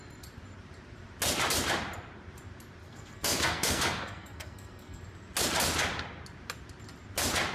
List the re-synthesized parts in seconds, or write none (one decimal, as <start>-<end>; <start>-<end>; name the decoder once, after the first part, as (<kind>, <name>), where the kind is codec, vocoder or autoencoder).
2.8-5.0 (codec, SNAC)